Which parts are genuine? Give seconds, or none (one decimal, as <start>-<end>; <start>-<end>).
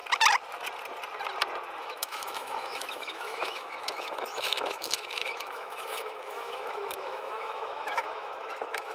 0.0-1.8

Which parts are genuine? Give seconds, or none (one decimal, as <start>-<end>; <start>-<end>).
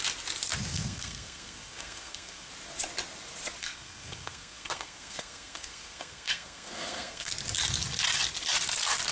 0.0-0.7; 2.5-3.6; 7.3-9.1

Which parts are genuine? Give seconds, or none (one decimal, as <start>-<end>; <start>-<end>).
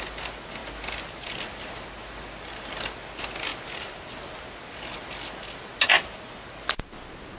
0.0-7.4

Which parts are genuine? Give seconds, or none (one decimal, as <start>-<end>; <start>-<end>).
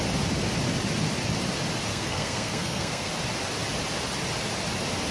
0.0-1.9; 3.1-5.1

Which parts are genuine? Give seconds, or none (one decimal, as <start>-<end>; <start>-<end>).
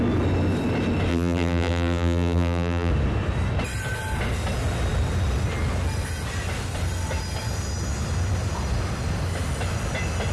0.0-1.1; 2.9-10.3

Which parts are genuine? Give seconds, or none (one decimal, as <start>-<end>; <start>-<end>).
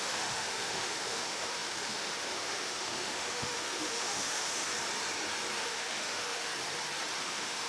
4.7-5.6; 6.5-7.2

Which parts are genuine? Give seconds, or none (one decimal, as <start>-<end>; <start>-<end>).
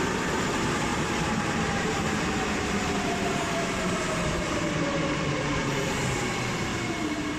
0.0-0.9; 5.3-6.7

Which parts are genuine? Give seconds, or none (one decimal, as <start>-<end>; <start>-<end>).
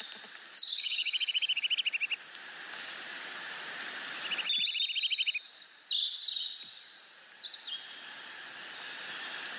0.0-0.7; 1.6-9.6